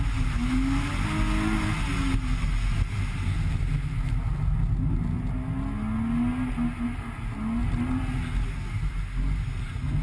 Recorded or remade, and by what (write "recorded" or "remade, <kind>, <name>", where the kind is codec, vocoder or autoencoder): recorded